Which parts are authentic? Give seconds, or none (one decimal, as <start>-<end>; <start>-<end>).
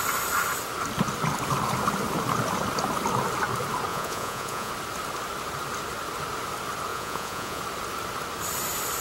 0.0-3.9; 4.7-6.9; 7.6-9.0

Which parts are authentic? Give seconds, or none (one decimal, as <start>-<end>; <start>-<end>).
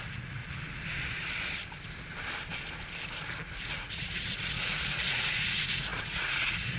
0.4-3.7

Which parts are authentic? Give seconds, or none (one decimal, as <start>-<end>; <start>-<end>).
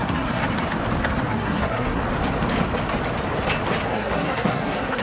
0.4-1.3; 2.0-3.9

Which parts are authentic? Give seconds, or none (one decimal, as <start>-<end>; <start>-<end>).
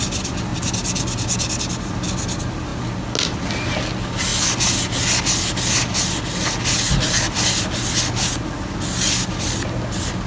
0.0-10.3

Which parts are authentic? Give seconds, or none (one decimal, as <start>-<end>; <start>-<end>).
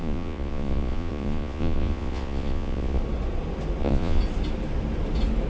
3.0-3.8; 4.2-5.5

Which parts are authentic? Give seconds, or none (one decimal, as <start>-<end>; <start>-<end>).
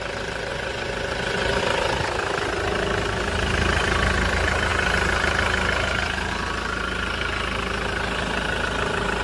0.0-0.5; 1.6-9.2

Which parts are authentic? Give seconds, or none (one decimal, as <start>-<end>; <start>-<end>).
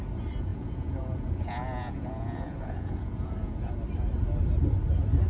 0.0-0.5; 3.7-5.3